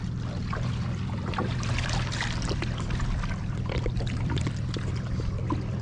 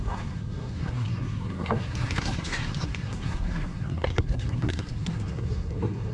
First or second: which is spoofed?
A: second